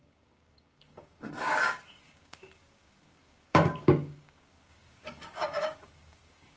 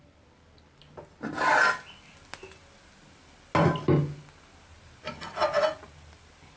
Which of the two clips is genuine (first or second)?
second